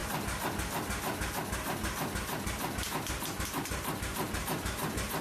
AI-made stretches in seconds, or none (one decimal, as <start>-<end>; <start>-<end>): 3.1-5.2